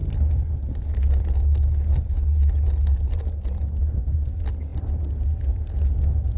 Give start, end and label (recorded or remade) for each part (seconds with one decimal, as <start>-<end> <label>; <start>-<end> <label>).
0.0-6.4 recorded